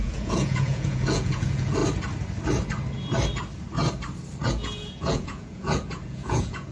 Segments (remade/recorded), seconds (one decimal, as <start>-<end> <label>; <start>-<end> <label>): 0.0-1.8 remade; 1.8-4.5 recorded; 4.5-6.7 remade